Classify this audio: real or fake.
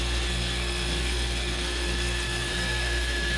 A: fake